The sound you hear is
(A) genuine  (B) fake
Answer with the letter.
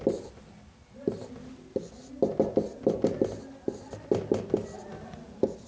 A